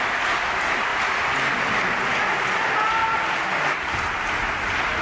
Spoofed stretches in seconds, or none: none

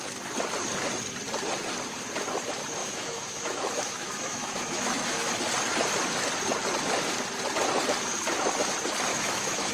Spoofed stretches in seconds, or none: 2.8-5.3 (autoencoder, DAC-VAE); 9.1-9.7

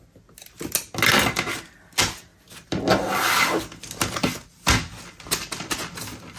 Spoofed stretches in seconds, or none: none

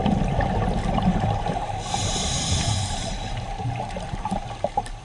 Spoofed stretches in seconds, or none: 1.1-4.1 (vocoder, BigVGAN v2)

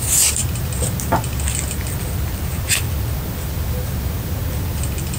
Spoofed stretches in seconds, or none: none

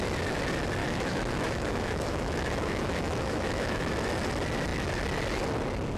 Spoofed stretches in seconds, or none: 0.8-3.9 (autoencoder, DAC-VAE)

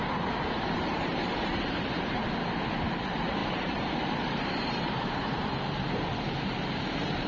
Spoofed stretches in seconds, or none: 0.0-2.2 (vocoder, BigVGAN v2); 3.0-7.3

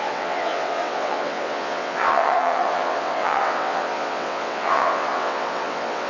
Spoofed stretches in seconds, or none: 0.0-6.1 (vocoder, WaveNeXt)